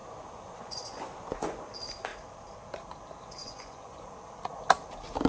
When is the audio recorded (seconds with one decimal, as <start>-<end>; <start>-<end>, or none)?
1.6-3.4; 4.2-5.3